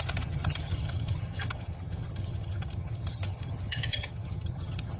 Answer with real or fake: fake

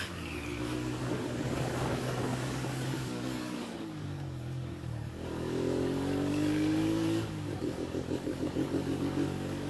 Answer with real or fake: fake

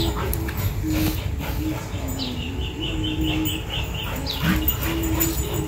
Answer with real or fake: real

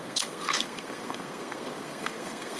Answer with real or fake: fake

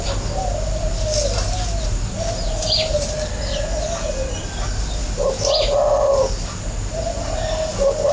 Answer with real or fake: real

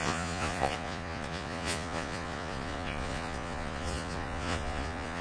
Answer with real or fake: fake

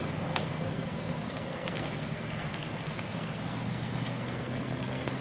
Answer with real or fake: fake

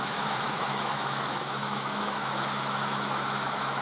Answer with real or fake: fake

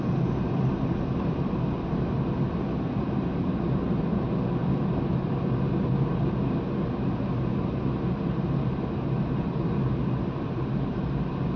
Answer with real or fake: real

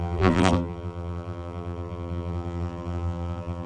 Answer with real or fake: fake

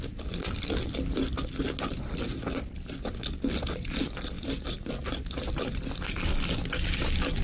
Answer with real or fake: real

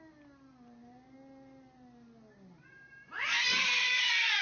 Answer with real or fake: real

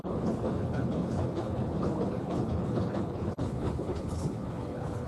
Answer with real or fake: fake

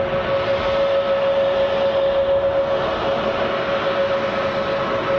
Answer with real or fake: real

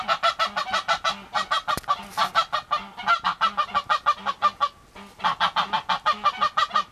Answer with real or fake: real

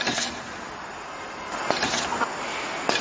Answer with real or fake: real